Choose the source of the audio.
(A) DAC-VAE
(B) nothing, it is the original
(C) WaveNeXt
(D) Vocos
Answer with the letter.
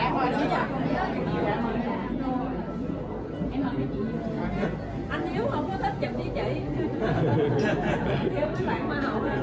B